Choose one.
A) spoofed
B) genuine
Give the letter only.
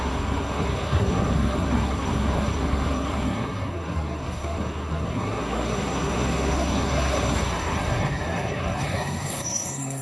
A